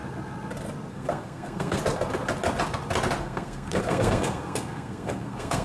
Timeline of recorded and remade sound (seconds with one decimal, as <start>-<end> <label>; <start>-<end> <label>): 0.0-0.9 recorded; 0.9-1.8 remade; 1.8-3.2 recorded; 3.2-5.6 remade